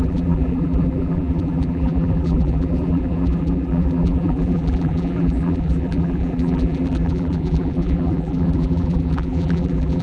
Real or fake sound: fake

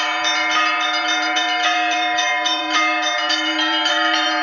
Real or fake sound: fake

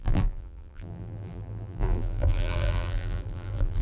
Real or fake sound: fake